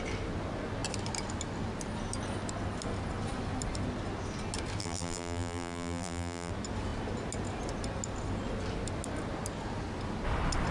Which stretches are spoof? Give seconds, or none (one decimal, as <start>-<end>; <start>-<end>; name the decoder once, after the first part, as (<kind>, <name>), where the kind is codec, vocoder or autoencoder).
4.8-6.5 (vocoder, BigVGAN v2)